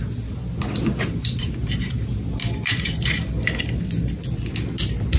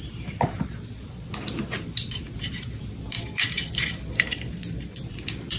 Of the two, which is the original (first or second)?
first